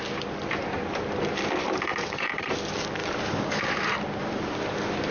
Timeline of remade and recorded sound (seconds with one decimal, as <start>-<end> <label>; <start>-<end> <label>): 0.0-2.0 recorded; 2.0-2.5 remade; 2.5-5.1 recorded